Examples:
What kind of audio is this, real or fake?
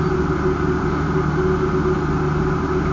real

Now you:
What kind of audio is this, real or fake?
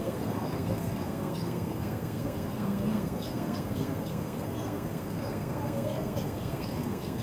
fake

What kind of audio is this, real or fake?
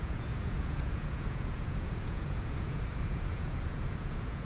fake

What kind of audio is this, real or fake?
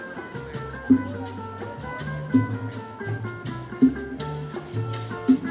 real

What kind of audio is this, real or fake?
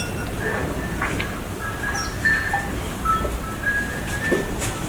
real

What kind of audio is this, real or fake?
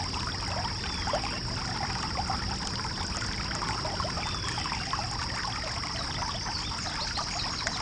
real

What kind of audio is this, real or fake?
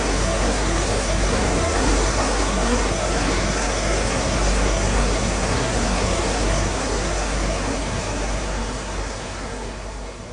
fake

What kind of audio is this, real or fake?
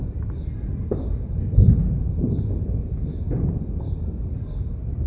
real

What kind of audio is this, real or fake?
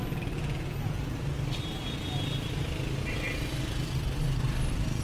real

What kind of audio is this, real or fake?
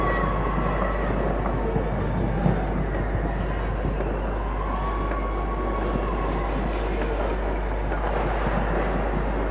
real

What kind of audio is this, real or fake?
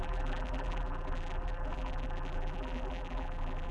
fake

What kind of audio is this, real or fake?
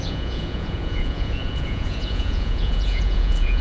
fake